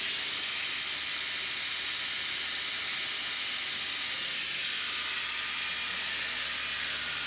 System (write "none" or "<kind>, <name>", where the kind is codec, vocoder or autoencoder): none